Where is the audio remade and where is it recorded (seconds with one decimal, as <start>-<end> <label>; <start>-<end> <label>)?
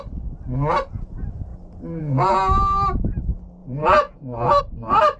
0.0-3.6 recorded; 3.6-4.6 remade; 4.6-5.2 recorded